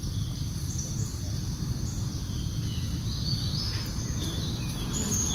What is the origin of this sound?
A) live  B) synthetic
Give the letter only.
A